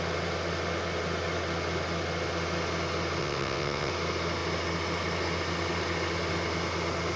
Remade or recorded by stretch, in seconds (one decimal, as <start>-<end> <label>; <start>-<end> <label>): 0.0-3.2 recorded; 3.2-3.9 remade; 3.9-7.2 recorded